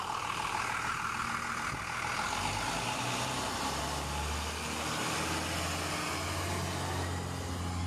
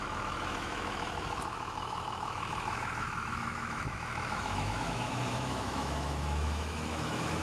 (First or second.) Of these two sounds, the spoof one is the second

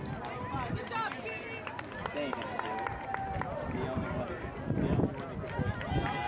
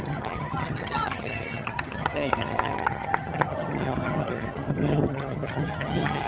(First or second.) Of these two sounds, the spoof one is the second